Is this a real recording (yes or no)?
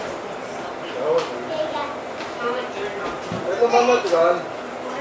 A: yes